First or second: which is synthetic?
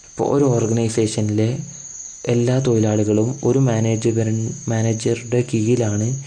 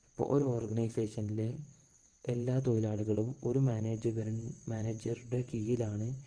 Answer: second